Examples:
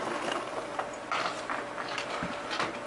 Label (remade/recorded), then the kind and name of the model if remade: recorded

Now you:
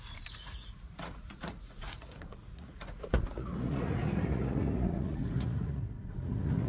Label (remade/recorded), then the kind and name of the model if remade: remade, vocoder, Vocos